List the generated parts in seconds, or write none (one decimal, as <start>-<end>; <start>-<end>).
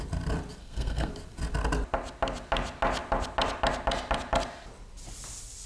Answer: 0.6-1.1